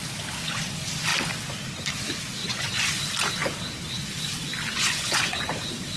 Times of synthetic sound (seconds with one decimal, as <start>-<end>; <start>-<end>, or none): 2.4-3.0; 4.7-5.5